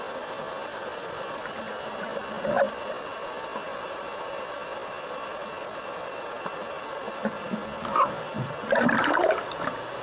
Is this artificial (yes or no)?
no